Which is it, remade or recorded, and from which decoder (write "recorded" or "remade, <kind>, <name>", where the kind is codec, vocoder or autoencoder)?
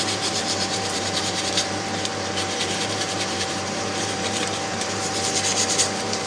remade, vocoder, BigVGAN v2